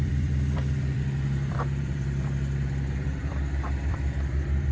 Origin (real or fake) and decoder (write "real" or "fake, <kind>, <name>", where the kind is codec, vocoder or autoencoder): fake, vocoder, BigVGAN v2